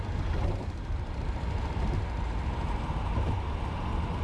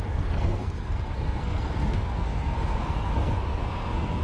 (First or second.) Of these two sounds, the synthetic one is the second